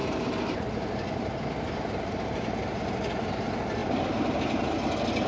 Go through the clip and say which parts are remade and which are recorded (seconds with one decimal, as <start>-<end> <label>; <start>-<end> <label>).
0.0-3.1 remade; 3.1-3.8 recorded; 3.8-4.7 remade; 4.7-5.3 recorded